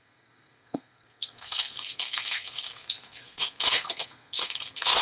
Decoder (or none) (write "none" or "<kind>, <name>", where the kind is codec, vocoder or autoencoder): codec, SNAC